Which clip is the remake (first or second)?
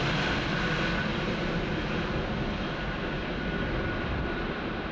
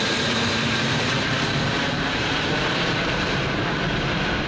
second